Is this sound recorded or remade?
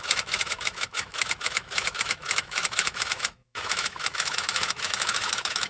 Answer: remade